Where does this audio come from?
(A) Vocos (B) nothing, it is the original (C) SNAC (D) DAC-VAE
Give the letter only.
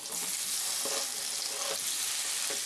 B